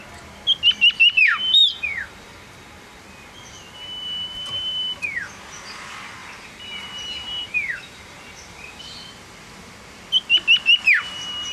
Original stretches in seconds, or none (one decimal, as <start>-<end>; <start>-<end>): 0.0-1.2; 3.0-6.2; 8.8-11.5